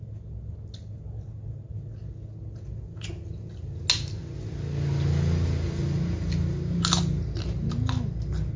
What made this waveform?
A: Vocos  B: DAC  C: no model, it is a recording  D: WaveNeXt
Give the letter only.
C